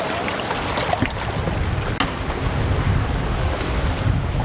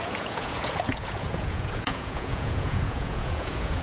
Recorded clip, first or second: first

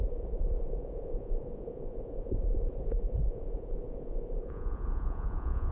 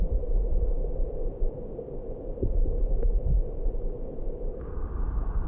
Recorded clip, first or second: second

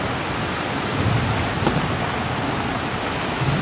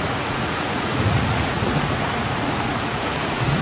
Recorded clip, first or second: first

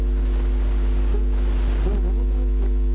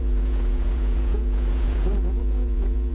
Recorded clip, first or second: first